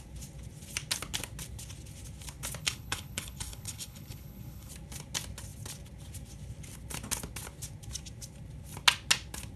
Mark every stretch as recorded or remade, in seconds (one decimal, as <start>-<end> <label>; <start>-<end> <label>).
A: 0.0-2.6 recorded; 2.6-4.7 remade; 4.7-9.6 recorded